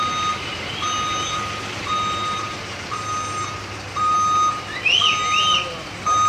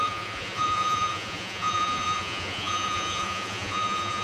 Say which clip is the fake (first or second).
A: second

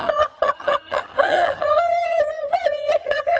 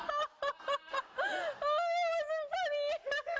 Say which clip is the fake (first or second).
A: first